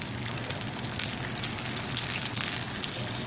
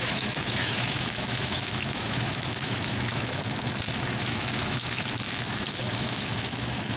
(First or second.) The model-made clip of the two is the second